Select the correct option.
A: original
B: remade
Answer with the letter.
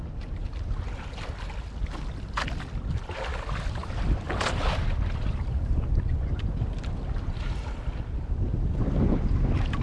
A